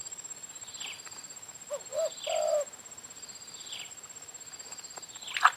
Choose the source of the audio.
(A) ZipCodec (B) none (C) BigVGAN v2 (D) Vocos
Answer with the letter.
C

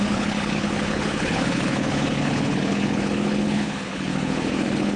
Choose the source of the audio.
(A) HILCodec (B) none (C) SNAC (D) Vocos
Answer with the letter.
A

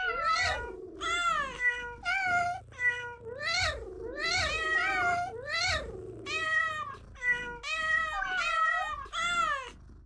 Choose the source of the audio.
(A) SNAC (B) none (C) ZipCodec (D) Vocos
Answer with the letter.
B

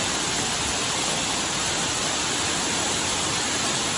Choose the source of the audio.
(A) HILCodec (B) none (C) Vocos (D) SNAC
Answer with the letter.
B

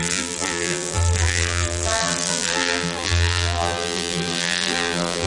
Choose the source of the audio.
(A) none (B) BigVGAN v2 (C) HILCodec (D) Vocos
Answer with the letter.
B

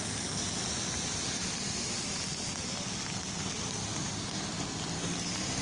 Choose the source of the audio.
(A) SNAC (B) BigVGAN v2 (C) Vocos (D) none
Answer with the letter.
D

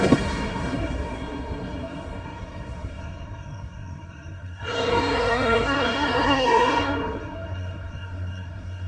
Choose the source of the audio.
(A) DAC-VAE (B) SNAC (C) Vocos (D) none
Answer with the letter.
B